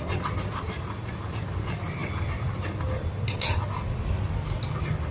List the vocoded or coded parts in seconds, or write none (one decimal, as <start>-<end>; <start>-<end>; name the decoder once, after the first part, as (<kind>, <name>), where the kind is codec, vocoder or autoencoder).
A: none